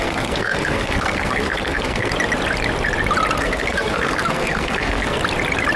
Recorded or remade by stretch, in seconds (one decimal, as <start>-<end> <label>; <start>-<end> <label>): 0.0-2.1 remade; 2.1-3.4 recorded; 3.4-5.2 remade; 5.2-5.8 recorded